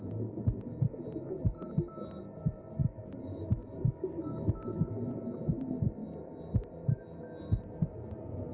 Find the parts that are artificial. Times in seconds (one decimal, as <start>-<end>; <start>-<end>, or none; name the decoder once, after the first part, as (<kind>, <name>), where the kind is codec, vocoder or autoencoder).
2.8-4.9 (codec, DAC)